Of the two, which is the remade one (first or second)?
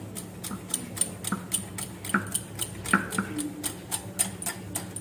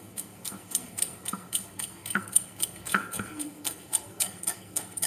second